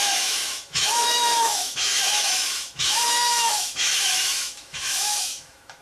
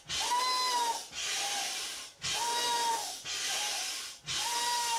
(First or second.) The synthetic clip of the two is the first